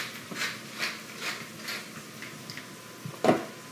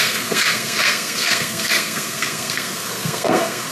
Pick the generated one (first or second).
second